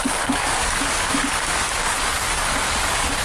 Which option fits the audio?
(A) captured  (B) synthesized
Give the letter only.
B